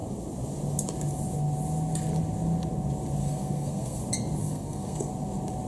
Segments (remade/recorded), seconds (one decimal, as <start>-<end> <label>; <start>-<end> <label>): 0.0-3.2 recorded; 3.2-4.0 remade; 4.0-4.4 recorded; 4.4-5.1 remade; 5.1-5.7 recorded